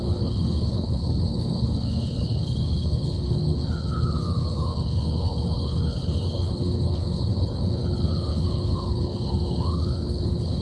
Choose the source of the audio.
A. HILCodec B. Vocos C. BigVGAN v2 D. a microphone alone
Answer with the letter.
A